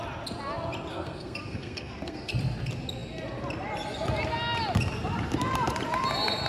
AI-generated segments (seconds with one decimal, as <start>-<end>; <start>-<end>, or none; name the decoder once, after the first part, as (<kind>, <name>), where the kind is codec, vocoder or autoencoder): 0.9-2.3 (codec, SNAC)